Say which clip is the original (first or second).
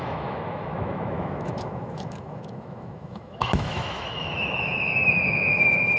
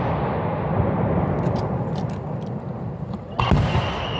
second